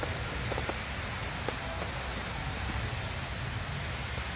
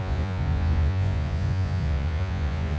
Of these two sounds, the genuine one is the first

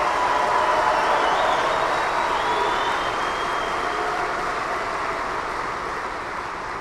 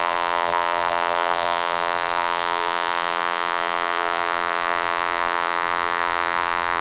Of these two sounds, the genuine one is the first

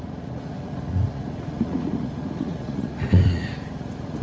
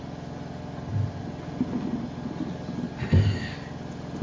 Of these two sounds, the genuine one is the second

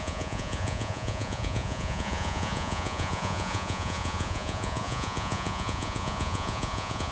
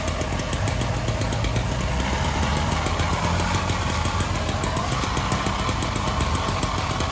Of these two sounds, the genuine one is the second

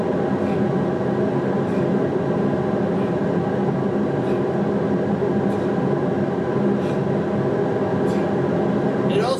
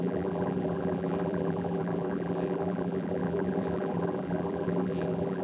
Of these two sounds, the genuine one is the first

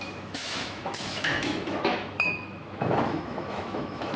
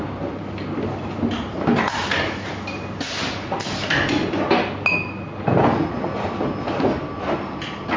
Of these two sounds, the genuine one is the second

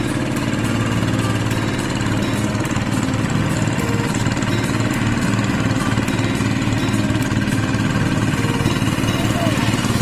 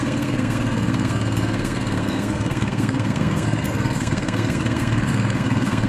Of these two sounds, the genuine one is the first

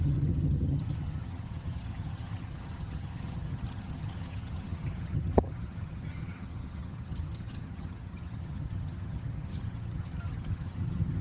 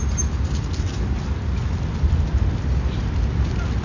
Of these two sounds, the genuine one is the second